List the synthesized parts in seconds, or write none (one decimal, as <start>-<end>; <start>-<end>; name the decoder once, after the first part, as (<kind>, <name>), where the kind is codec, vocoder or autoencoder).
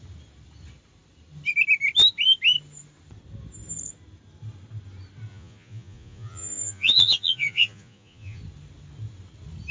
5.3-8.4 (vocoder, Vocos)